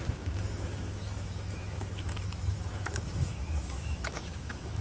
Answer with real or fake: fake